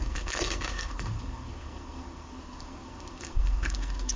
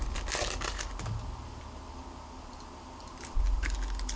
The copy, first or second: first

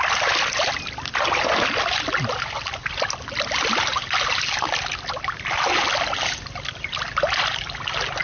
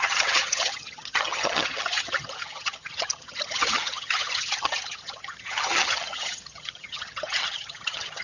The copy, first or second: second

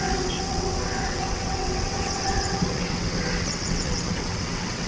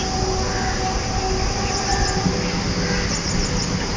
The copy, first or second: first